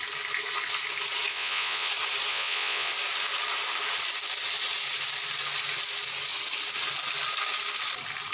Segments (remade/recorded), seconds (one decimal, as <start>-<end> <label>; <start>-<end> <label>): 0.0-1.3 recorded; 1.3-1.9 remade; 1.9-2.3 recorded; 2.3-2.9 remade; 2.9-8.3 recorded